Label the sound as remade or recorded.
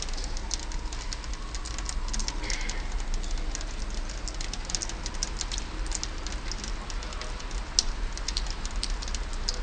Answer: recorded